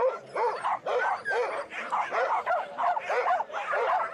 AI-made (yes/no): yes